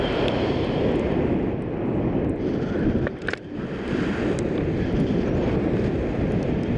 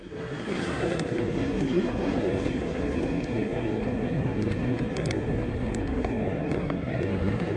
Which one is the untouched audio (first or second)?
first